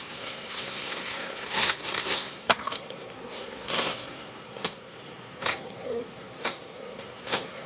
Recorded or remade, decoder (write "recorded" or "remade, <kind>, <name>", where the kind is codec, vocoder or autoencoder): remade, codec, SNAC